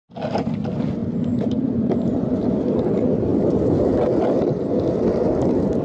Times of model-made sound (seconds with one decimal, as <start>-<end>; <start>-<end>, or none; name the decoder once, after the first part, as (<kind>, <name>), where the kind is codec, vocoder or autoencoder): 1.0-2.6 (vocoder, BigVGAN v2); 3.3-3.9